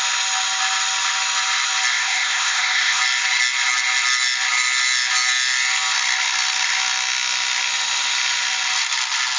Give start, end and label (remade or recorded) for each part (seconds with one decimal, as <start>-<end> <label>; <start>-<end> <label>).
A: 0.0-1.9 recorded; 1.9-3.0 remade; 3.0-9.4 recorded

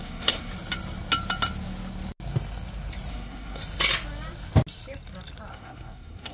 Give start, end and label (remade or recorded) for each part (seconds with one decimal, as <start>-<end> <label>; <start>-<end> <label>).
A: 0.0-0.5 remade; 0.5-3.1 recorded; 3.1-3.6 remade; 3.6-5.5 recorded; 5.5-6.3 remade

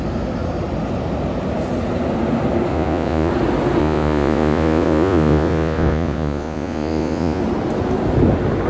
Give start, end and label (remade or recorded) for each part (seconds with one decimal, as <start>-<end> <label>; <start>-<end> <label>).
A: 0.0-2.7 recorded; 2.7-3.3 remade; 3.3-3.8 recorded; 3.8-7.4 remade; 7.4-8.7 recorded